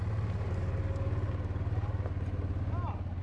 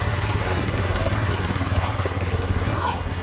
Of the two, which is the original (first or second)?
first